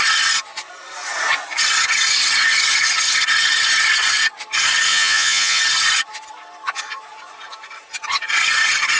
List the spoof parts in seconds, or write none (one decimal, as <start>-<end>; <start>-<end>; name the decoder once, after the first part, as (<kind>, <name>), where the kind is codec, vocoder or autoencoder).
4.9-5.6 (vocoder, Vocos)